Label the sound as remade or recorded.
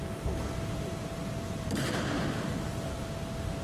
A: remade